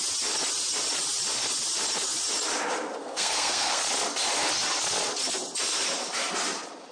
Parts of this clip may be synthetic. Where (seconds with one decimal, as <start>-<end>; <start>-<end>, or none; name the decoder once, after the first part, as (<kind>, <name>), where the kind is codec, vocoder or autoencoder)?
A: 3.0-3.8 (codec, SNAC)